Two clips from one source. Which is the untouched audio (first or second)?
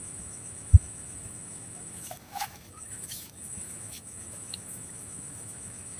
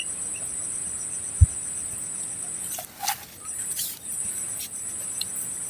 second